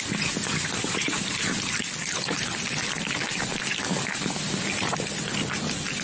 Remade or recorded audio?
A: remade